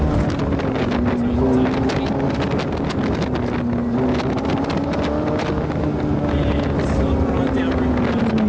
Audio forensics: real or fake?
real